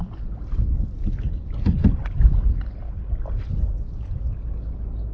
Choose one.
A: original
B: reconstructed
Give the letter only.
A